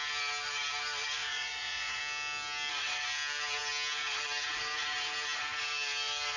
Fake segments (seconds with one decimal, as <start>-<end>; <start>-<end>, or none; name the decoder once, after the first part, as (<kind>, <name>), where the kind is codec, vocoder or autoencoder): 1.2-2.0 (vocoder, Vocos)